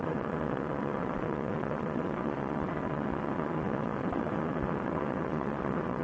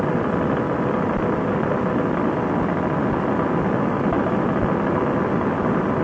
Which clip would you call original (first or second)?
second